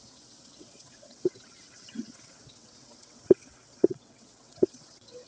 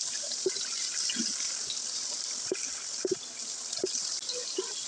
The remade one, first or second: first